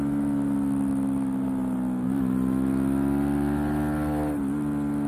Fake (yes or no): no